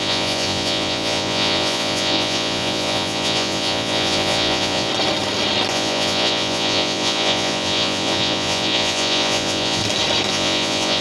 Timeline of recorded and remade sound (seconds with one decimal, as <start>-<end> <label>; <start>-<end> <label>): 0.0-4.9 remade; 4.9-5.7 recorded; 5.7-9.8 remade; 9.8-10.3 recorded; 10.3-11.0 remade